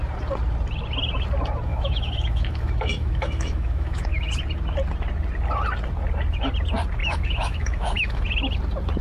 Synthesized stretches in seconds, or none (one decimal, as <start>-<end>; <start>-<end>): 1.7-4.3; 7.0-8.2